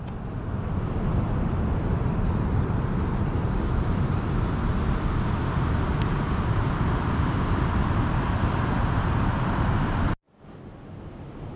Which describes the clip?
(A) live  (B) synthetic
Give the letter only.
A